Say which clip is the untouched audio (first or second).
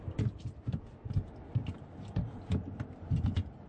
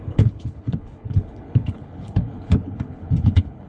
first